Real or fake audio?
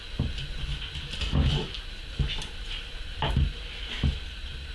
real